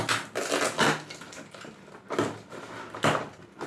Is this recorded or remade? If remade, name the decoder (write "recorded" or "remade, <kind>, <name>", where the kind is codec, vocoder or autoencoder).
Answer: recorded